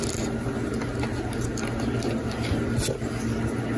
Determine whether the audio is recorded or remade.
recorded